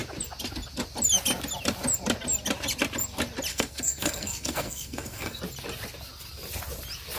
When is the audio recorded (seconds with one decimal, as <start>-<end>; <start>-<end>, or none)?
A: 0.0-3.5; 5.4-7.2